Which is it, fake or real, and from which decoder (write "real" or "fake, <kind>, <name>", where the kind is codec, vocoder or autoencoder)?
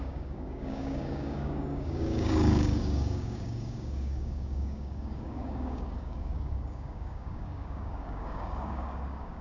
fake, codec, DAC